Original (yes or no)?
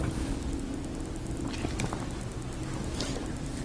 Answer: yes